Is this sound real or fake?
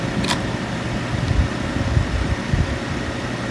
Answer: real